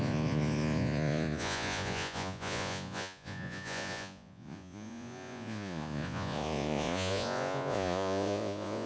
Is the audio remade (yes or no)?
yes